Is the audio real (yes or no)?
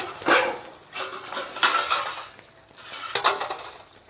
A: yes